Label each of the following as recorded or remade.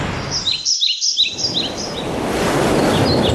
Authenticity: recorded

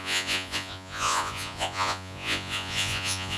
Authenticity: remade